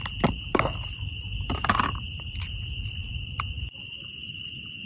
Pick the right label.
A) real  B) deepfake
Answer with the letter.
B